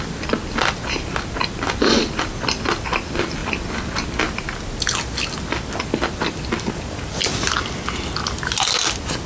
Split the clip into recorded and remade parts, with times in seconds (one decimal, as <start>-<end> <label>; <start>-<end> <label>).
0.0-9.3 recorded